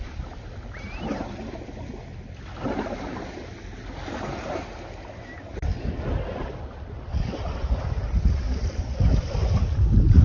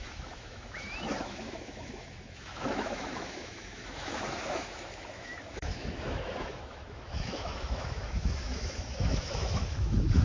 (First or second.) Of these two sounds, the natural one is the first